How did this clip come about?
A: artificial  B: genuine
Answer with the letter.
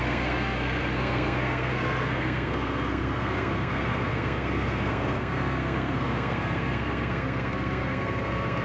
A